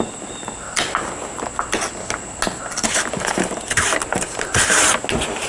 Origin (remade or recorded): recorded